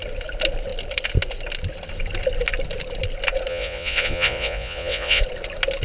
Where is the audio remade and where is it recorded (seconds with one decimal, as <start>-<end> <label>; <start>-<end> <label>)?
0.0-3.5 recorded; 3.5-5.2 remade; 5.2-5.8 recorded